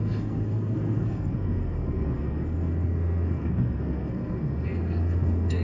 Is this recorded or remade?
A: remade